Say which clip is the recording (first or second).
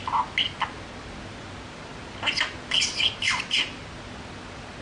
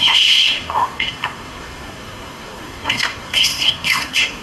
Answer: first